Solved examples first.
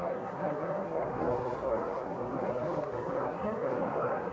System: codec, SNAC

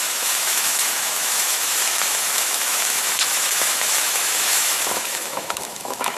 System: autoencoder, DAC-VAE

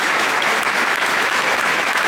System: autoencoder, DAC-VAE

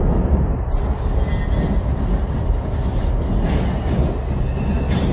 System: none